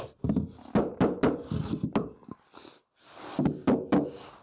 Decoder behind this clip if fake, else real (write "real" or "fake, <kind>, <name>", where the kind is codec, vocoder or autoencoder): real